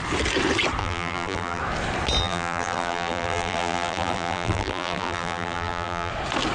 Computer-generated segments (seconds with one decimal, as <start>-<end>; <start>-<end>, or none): 0.8-1.6; 2.2-6.1